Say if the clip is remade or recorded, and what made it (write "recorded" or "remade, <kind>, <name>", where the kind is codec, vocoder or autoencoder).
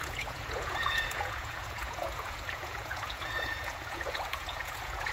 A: remade, vocoder, Vocos